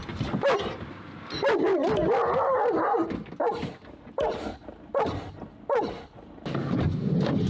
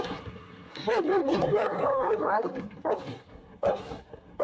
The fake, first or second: second